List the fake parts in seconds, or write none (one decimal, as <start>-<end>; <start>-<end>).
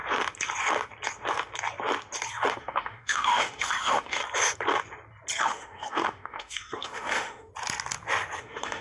2.6-4.2; 5.4-7.5; 8.4-8.8